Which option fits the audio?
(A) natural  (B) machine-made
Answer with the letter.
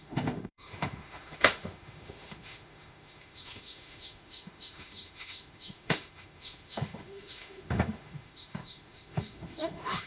B